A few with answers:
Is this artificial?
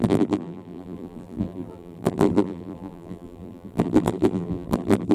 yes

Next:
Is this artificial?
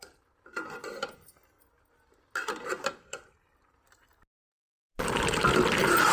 no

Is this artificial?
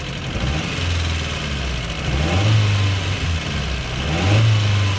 no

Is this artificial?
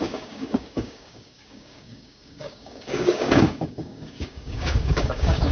yes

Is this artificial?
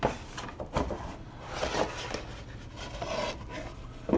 no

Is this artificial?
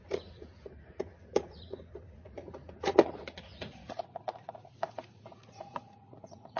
yes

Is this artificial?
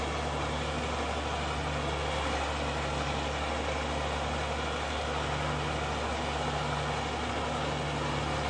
no